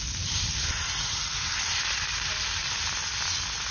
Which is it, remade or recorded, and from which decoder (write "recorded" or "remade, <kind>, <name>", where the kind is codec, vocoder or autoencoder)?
recorded